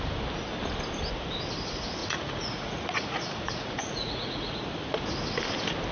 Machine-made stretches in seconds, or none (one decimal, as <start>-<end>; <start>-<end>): 2.0-4.6